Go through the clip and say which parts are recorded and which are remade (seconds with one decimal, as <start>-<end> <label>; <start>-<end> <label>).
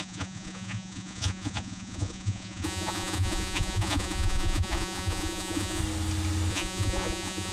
0.0-5.8 remade; 5.8-6.5 recorded; 6.5-7.5 remade